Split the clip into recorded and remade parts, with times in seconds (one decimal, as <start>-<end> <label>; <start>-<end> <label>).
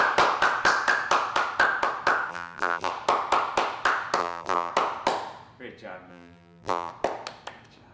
0.0-2.3 recorded; 2.3-2.9 remade; 2.9-4.2 recorded; 4.2-4.7 remade; 4.7-6.1 recorded; 6.1-6.9 remade; 6.9-7.9 recorded